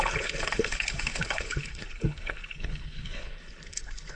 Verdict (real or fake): fake